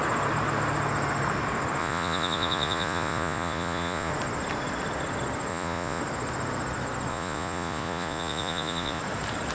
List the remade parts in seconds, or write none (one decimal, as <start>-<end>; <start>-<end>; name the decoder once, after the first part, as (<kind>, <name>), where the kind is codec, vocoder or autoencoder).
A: 1.8-4.1 (vocoder, Vocos); 5.5-6.0; 7.1-9.0